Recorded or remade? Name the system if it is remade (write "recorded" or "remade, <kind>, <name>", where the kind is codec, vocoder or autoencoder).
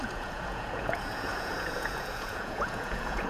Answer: remade, vocoder, Vocos